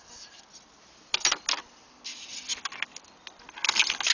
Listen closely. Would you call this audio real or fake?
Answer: real